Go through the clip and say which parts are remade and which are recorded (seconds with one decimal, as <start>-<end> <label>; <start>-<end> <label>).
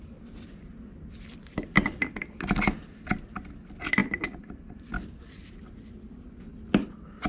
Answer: 0.0-3.0 remade; 3.0-4.0 recorded; 4.0-6.1 remade; 6.1-7.3 recorded